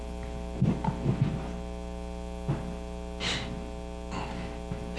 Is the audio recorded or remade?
recorded